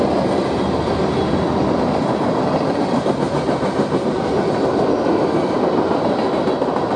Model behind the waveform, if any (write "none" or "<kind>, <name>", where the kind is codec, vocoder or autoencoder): none